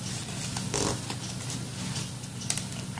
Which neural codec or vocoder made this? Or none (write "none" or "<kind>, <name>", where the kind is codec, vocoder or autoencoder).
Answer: none